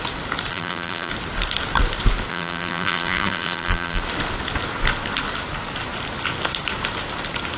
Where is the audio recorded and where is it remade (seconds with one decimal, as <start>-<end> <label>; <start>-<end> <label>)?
0.0-0.5 recorded; 0.5-1.1 remade; 1.1-2.3 recorded; 2.3-4.0 remade; 4.0-7.6 recorded

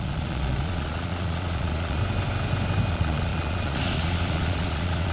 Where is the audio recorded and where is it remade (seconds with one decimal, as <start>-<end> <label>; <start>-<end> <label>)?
0.0-2.0 remade; 2.0-2.9 recorded; 2.9-5.1 remade